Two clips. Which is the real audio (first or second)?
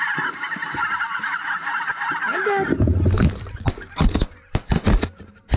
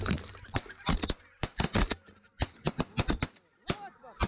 second